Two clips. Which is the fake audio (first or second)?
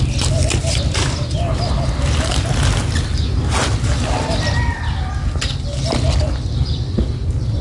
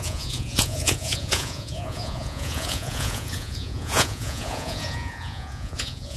second